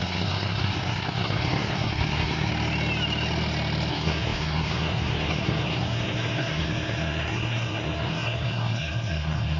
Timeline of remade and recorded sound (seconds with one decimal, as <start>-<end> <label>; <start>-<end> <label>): 0.0-2.5 remade; 2.5-3.9 recorded; 3.9-9.6 remade